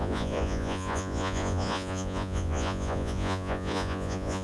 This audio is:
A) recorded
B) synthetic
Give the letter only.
B